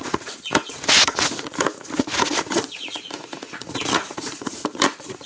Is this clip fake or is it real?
fake